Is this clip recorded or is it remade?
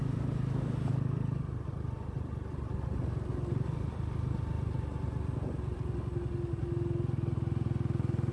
recorded